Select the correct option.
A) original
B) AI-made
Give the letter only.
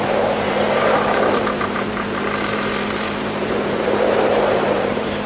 B